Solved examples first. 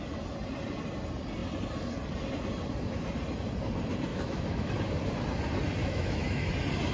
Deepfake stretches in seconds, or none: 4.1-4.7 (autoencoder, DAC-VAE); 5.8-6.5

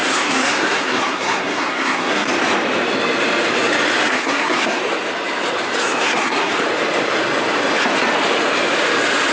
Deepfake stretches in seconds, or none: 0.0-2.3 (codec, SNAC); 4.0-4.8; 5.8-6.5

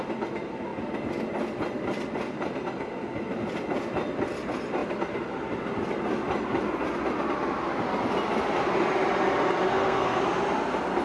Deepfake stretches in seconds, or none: 9.7-10.2 (codec, SNAC)

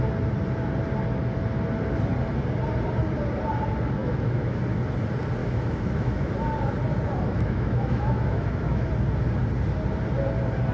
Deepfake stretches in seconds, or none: 4.0-4.6 (autoencoder, DAC-VAE); 5.4-6.3; 7.3-8.9